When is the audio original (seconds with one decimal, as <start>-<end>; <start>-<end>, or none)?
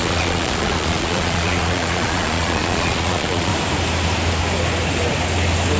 3.5-5.8